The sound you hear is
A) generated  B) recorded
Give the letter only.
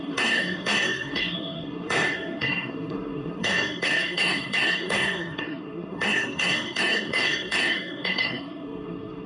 A